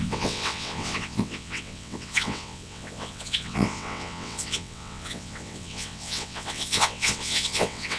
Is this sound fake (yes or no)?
yes